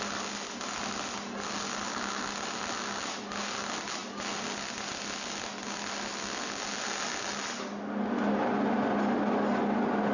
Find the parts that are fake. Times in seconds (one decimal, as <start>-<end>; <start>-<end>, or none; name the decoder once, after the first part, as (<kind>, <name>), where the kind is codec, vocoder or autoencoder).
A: none